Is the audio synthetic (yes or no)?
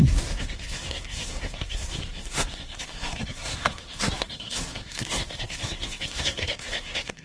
yes